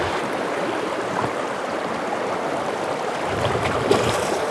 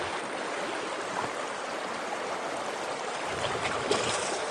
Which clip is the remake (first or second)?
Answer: first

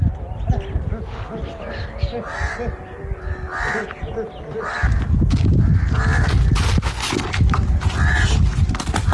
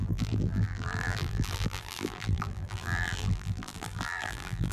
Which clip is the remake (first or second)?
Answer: second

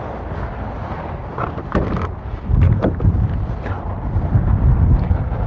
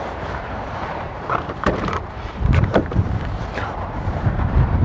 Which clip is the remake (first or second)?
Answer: second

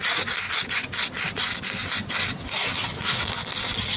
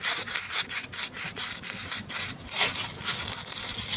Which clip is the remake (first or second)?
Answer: second